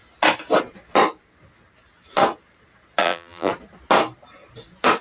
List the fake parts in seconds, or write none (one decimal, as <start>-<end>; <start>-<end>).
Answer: 3.0-3.5